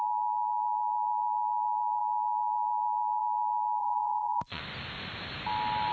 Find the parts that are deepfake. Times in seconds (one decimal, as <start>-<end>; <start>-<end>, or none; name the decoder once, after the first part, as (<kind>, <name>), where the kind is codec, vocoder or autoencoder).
3.8-4.6 (vocoder, Vocos)